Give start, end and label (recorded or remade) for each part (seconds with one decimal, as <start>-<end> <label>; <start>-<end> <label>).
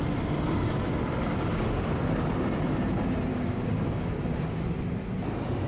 0.0-3.3 recorded; 3.3-4.1 remade; 4.1-5.7 recorded